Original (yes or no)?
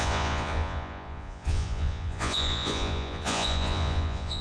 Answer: no